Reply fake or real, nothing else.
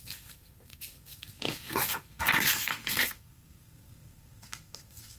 fake